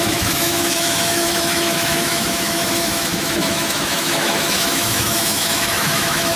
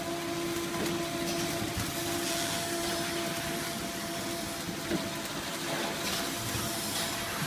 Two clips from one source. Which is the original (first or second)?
second